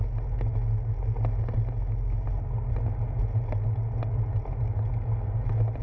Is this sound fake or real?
real